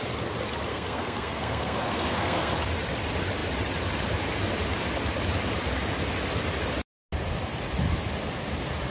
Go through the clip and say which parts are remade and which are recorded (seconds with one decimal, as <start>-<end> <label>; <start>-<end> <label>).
0.0-0.7 recorded; 0.7-2.5 remade; 2.5-8.9 recorded